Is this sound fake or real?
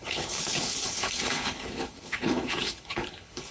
fake